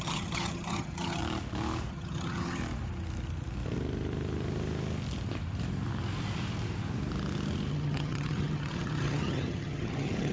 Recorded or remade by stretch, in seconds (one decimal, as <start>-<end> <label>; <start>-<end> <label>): 0.0-1.2 remade; 1.2-1.9 recorded; 1.9-2.6 remade; 2.6-7.7 recorded; 7.7-10.3 remade